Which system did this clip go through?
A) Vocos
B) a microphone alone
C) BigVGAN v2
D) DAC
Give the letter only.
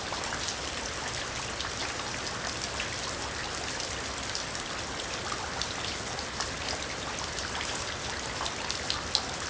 B